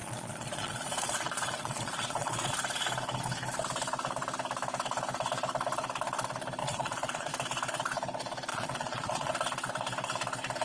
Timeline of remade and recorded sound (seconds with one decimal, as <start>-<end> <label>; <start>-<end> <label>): 0.0-2.5 remade; 2.5-6.6 recorded; 6.6-7.3 remade; 7.3-8.5 recorded; 8.5-9.3 remade; 9.3-10.6 recorded